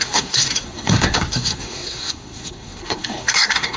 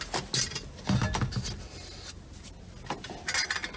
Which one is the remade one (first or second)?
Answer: first